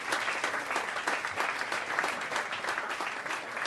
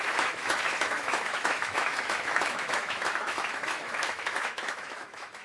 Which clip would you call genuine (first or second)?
first